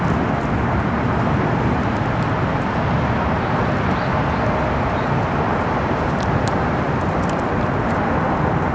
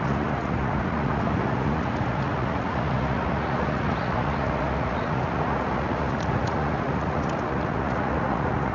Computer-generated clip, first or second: second